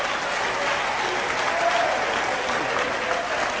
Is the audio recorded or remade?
recorded